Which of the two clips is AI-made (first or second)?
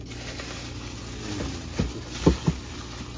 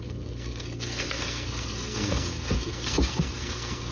second